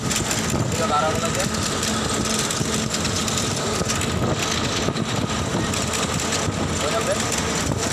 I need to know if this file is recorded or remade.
recorded